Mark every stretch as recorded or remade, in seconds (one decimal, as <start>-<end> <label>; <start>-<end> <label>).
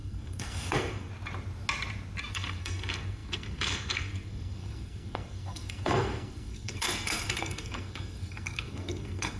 0.0-1.1 remade; 1.1-2.3 recorded; 2.3-9.4 remade